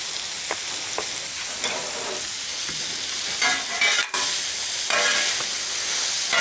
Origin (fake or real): real